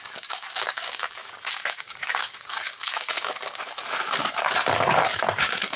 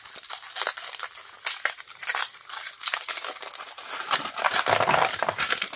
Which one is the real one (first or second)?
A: second